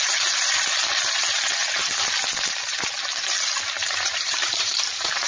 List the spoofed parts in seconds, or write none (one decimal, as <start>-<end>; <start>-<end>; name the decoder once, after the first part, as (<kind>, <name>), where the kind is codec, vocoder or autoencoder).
3.8-5.3 (vocoder, BigVGAN v2)